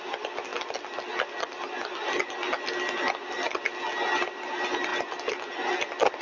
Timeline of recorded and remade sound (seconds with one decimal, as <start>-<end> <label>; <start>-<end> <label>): 0.0-6.2 recorded